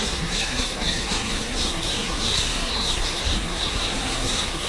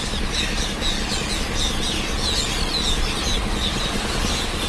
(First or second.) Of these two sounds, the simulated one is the first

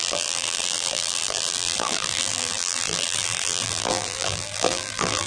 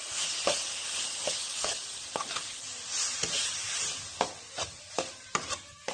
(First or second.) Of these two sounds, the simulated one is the first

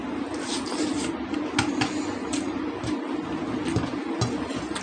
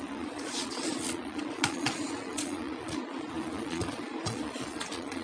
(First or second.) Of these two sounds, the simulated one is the second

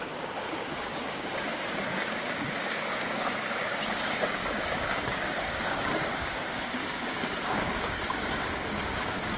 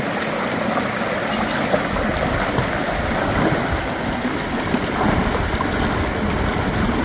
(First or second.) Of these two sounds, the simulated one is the first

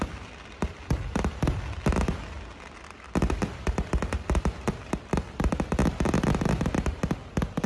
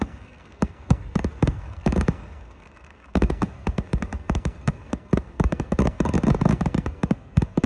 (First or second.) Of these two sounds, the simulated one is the second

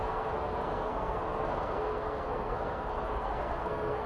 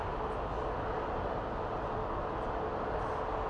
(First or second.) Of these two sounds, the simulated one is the first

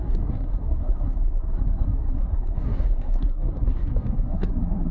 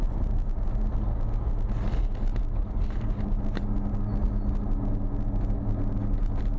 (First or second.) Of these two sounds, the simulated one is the first